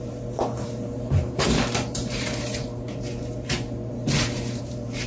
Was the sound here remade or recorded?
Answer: remade